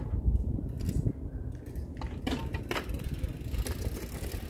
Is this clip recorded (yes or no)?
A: yes